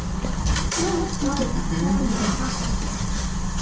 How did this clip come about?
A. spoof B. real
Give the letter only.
A